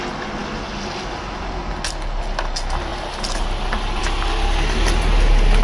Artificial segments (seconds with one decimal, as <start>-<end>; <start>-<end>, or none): none